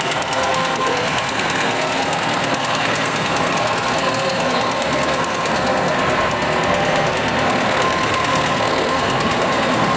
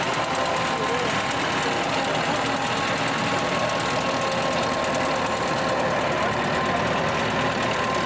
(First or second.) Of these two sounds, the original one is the second